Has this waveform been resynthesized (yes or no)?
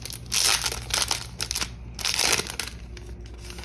no